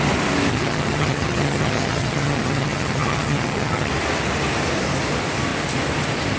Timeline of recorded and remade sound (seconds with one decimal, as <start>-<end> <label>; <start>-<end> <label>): 0.0-0.5 recorded; 0.5-3.9 remade; 3.9-6.4 recorded